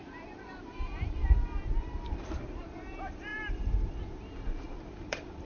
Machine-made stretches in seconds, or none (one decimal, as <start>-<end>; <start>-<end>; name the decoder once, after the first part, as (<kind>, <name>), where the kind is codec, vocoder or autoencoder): 0.0-1.2 (vocoder, BigVGAN v2); 1.8-5.5